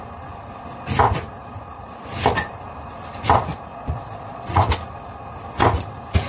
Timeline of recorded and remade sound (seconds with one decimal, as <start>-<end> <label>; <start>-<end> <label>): 0.0-3.7 recorded; 3.7-4.6 remade; 4.6-6.3 recorded